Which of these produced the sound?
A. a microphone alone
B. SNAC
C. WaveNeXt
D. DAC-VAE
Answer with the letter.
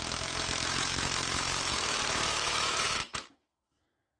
D